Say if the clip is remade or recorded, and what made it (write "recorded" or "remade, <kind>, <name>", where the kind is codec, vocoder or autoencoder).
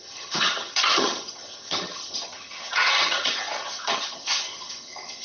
remade, vocoder, HiFi-GAN